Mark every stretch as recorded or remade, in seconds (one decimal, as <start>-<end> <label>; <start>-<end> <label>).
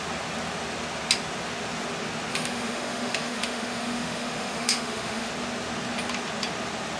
0.0-2.3 recorded; 2.3-5.3 remade; 5.3-7.0 recorded